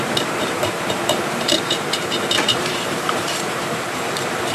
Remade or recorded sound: remade